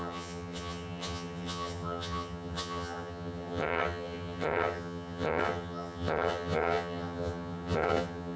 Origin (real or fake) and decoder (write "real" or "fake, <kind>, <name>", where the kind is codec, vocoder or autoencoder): fake, vocoder, HiFi-GAN